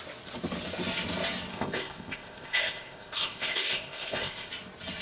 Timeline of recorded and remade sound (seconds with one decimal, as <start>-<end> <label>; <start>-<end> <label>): 0.0-1.5 recorded; 1.5-4.5 remade; 4.5-5.0 recorded